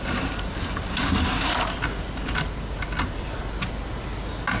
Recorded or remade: recorded